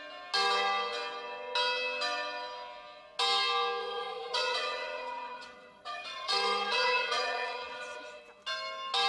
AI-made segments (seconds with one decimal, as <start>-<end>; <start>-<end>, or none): 3.8-8.2